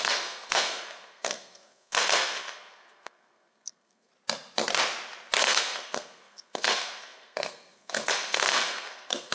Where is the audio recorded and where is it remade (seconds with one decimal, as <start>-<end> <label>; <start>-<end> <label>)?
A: 0.0-4.1 remade; 4.1-5.4 recorded; 5.4-9.3 remade